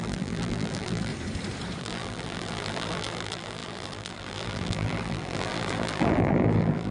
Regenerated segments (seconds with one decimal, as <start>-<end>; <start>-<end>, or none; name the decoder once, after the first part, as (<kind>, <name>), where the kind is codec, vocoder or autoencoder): 0.0-1.1 (vocoder, BigVGAN v2); 1.8-6.9